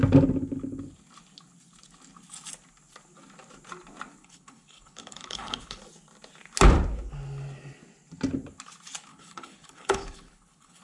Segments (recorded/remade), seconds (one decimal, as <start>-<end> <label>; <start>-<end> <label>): 0.0-4.2 recorded; 4.2-5.8 remade; 5.8-9.1 recorded; 9.1-10.8 remade